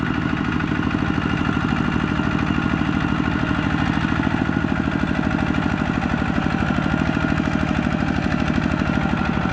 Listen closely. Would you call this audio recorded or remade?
recorded